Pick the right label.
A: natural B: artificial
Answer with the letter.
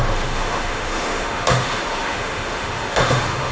B